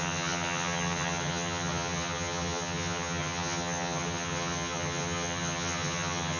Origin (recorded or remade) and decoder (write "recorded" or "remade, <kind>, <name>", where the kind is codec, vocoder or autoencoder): remade, vocoder, HiFi-GAN